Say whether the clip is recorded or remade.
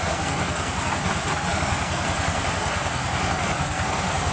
remade